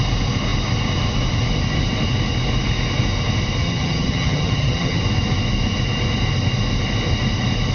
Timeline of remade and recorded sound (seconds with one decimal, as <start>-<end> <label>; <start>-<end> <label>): 0.0-3.6 recorded; 3.6-5.0 remade; 5.0-7.7 recorded